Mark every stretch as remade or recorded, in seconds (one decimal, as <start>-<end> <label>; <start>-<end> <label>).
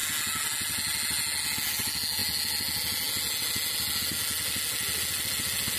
0.0-5.8 recorded